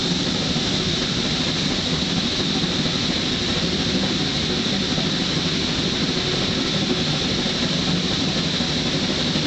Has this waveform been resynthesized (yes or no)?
no